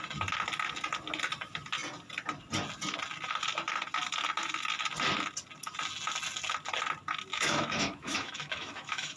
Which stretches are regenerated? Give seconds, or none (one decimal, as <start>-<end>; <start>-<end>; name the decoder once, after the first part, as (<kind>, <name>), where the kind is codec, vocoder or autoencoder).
7.3-9.2 (autoencoder, DAC-VAE)

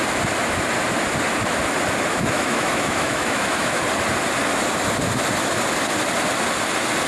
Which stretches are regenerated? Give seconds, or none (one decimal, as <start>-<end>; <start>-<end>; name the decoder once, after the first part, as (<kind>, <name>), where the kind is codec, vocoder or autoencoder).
2.1-3.8 (autoencoder, DAC-VAE)

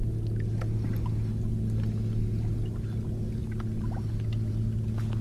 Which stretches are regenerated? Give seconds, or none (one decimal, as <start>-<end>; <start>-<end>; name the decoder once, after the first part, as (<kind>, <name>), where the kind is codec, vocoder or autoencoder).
none

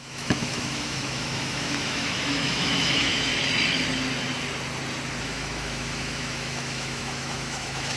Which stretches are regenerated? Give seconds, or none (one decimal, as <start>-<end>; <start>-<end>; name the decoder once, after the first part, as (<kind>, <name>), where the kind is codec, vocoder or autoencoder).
0.0-3.3 (autoencoder, DAC-VAE); 5.2-8.0

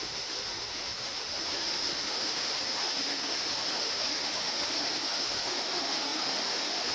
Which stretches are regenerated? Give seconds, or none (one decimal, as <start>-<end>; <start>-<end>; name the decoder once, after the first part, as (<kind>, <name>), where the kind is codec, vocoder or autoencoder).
0.0-6.9 (autoencoder, DAC-VAE)